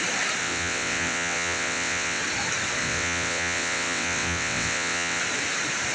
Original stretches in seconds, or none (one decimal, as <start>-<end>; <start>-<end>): 0.0-0.4; 2.2-2.8; 5.2-5.9